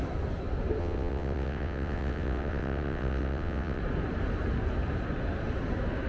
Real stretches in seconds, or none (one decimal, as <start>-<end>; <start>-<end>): 0.0-0.8; 3.8-6.1